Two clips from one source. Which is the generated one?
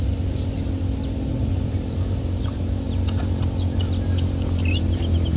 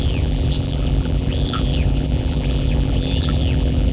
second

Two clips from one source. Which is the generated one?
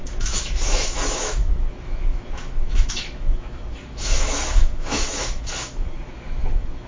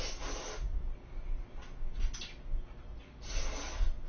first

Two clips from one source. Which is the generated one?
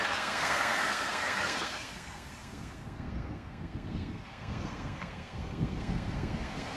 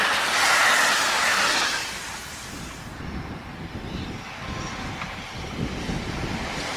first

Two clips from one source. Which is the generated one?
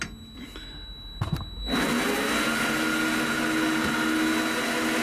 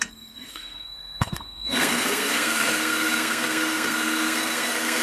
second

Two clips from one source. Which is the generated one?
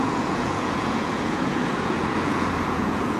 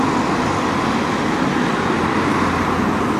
first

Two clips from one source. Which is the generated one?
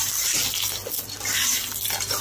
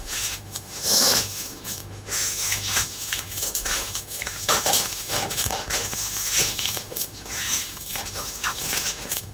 second